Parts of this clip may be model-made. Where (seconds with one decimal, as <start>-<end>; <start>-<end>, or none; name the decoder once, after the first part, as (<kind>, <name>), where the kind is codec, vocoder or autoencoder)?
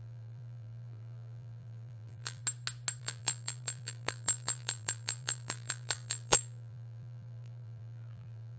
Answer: 0.0-2.4 (vocoder, BigVGAN v2); 3.0-8.6